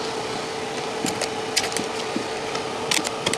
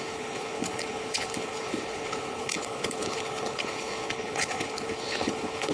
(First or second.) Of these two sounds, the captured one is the first